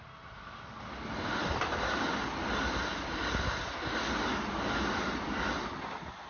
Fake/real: real